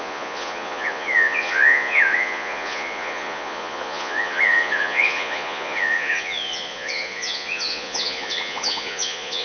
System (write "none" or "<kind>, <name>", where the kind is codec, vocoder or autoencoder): vocoder, Vocos